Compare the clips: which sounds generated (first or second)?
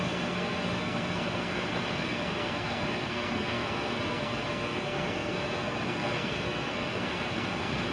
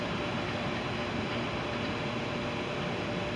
first